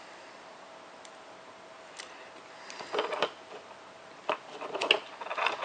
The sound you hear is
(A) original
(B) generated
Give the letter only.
A